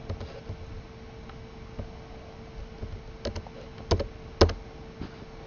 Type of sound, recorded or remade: recorded